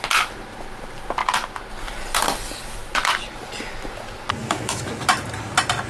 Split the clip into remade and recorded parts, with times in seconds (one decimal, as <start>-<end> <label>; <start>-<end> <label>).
0.0-4.4 recorded; 4.4-4.9 remade; 4.9-5.9 recorded